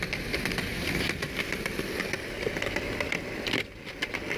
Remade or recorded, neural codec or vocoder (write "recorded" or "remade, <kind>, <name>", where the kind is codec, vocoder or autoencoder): recorded